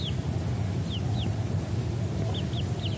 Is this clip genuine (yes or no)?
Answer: yes